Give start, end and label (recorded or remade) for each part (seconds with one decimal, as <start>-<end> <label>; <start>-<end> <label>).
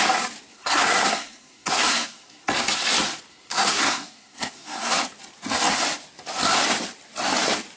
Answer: 0.0-0.5 recorded; 0.5-2.5 remade; 2.5-3.3 recorded; 3.3-5.0 remade; 5.0-7.8 recorded